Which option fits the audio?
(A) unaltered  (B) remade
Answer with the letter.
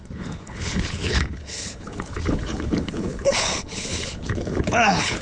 B